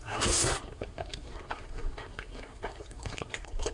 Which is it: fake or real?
fake